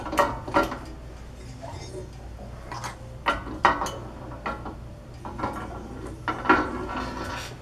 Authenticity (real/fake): real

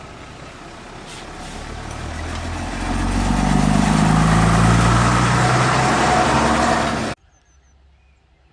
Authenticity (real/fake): real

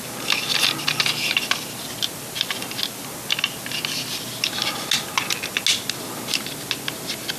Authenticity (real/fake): real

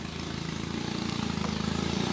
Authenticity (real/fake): real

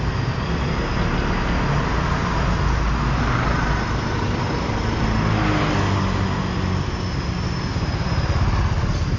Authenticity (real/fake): real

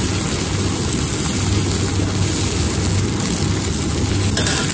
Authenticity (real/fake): real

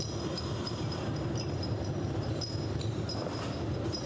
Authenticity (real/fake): fake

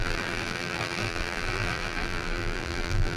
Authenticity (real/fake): fake